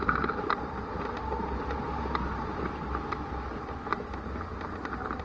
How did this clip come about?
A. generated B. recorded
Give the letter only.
B